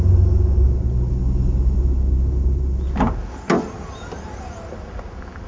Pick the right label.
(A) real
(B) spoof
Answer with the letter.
A